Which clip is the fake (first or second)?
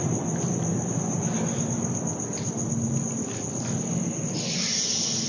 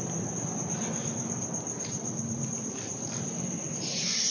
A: second